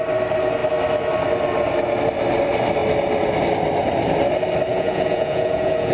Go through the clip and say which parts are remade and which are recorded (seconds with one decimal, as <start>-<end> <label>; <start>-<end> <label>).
0.0-4.7 recorded; 4.7-5.9 remade